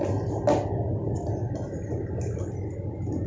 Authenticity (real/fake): real